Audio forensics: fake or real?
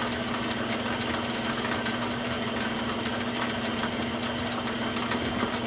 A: real